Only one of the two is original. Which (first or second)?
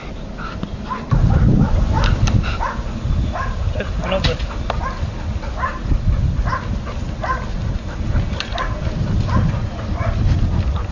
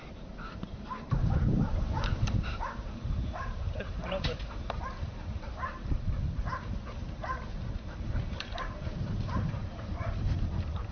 first